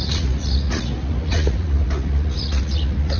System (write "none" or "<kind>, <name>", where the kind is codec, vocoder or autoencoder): vocoder, Vocos